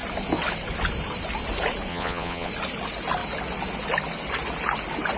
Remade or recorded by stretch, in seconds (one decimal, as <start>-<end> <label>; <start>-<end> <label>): 0.0-1.9 recorded; 1.9-2.5 remade; 2.5-5.2 recorded